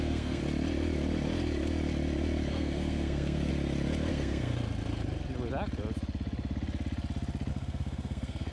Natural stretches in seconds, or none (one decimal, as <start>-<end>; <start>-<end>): 0.4-2.5; 3.5-4.1; 4.5-7.5